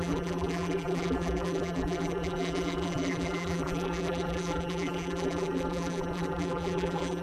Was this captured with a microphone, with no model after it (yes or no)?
no